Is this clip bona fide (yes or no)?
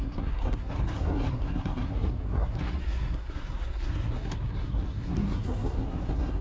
no